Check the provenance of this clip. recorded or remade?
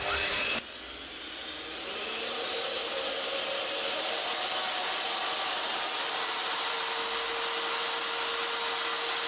recorded